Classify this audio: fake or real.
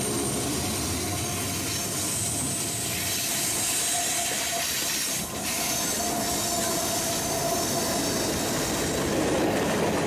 real